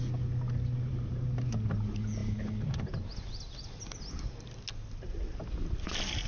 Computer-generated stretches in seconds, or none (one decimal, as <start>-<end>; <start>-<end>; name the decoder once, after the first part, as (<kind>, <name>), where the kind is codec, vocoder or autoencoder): none